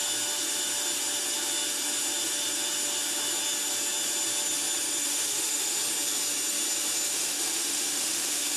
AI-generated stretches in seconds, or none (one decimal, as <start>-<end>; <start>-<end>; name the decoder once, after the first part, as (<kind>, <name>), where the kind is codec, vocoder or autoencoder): 5.0-5.8 (autoencoder, DAC-VAE); 7.1-8.6